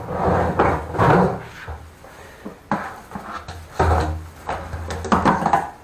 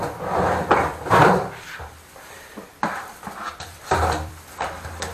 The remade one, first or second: second